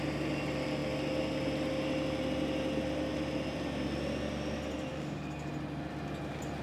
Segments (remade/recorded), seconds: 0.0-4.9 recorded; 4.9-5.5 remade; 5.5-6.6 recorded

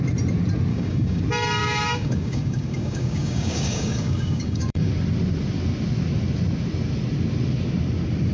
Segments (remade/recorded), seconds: 0.0-0.7 recorded; 0.7-1.2 remade; 1.2-1.6 recorded; 1.6-4.9 remade; 4.9-8.3 recorded

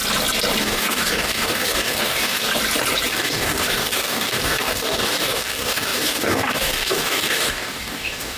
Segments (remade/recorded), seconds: 0.0-0.6 recorded; 0.6-2.5 remade; 2.5-3.1 recorded; 3.1-8.4 remade

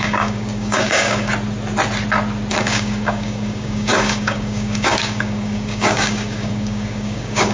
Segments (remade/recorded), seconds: 0.0-1.3 remade; 1.3-2.5 recorded; 2.5-7.5 remade

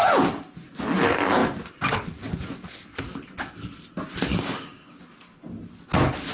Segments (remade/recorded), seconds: 0.0-4.3 recorded; 4.3-5.0 remade; 5.0-6.3 recorded